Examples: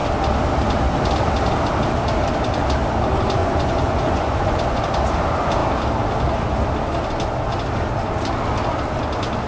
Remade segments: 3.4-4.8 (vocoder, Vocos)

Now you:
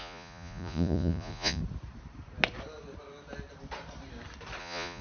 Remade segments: 0.0-1.6 (vocoder, Vocos); 4.6-5.0

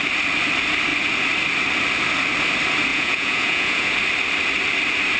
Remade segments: 2.9-3.9 (vocoder, Vocos)

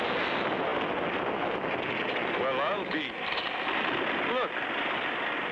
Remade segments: none